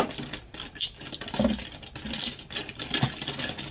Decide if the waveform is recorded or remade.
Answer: recorded